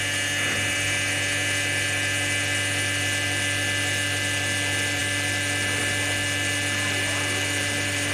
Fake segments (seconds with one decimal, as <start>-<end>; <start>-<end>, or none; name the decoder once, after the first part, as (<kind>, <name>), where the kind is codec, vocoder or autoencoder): none